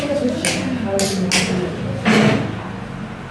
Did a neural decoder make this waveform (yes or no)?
no